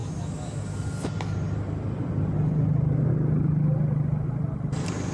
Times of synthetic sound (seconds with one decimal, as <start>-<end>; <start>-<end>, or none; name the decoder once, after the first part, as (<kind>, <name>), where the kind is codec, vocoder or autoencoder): none